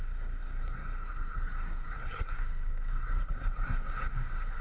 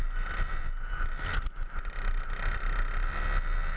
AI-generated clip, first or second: first